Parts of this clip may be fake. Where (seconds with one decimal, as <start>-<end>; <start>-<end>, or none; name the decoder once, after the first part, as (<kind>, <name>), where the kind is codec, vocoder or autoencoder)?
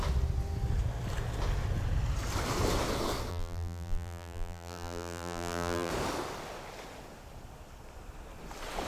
3.3-5.9 (vocoder, BigVGAN v2)